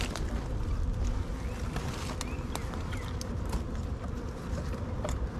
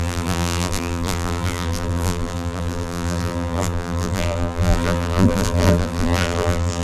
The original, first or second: first